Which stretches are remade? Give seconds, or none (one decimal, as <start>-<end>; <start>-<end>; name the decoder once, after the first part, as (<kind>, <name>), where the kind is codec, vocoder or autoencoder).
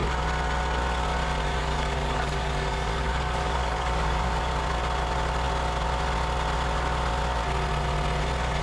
1.6-4.5 (codec, DAC)